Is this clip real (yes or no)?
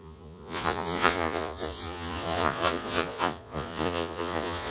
no